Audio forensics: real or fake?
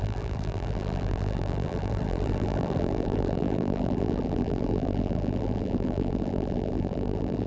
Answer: fake